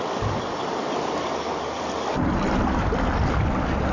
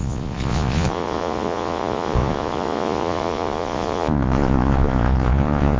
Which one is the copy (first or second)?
second